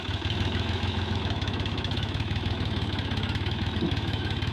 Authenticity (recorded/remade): remade